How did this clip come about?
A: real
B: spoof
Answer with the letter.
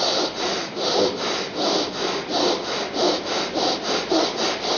A